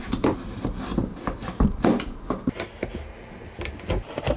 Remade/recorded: recorded